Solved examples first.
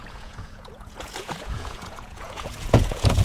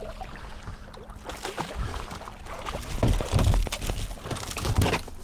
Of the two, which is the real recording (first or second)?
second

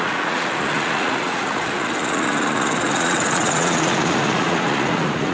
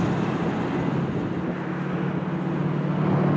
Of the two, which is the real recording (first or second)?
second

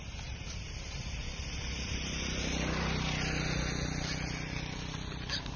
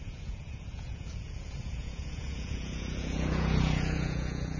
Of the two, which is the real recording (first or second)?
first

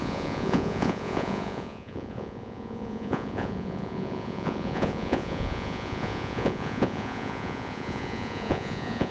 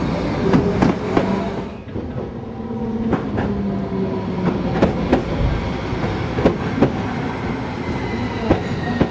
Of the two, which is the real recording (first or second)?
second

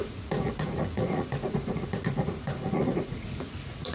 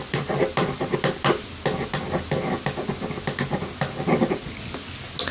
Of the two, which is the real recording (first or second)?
second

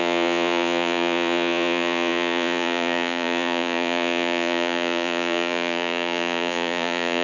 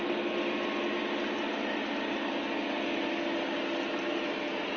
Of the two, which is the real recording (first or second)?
second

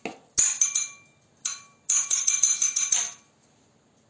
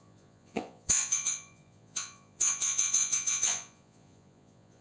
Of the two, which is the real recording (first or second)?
first